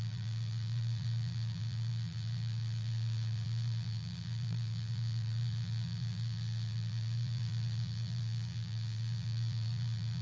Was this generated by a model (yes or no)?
yes